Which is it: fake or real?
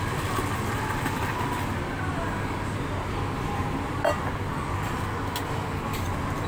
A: real